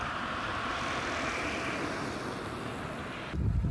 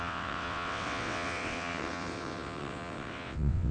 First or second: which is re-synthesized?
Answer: second